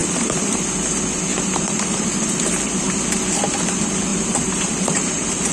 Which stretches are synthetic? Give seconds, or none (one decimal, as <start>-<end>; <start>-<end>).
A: 0.0-0.6; 1.3-2.5; 4.1-5.5